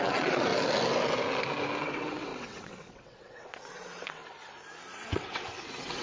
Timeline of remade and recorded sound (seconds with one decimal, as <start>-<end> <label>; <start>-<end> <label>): 0.0-0.5 remade; 0.5-1.8 recorded; 1.8-4.2 remade; 4.2-5.0 recorded; 5.0-6.0 remade